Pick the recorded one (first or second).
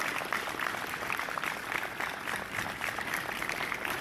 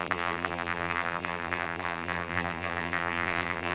first